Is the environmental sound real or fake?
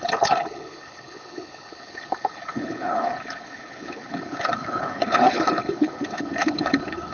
fake